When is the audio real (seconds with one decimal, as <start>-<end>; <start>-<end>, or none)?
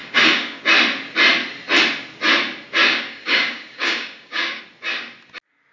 0.6-2.8; 4.6-5.7